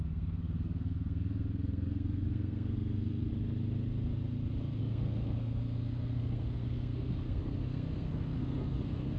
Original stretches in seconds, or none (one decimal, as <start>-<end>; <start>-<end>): 3.3-4.8